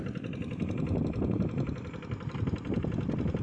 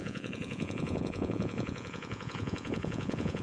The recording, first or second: first